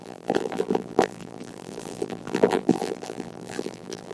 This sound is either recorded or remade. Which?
remade